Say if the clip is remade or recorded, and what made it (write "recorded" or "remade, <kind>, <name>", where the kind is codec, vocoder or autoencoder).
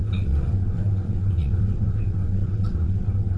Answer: remade, vocoder, WaveNeXt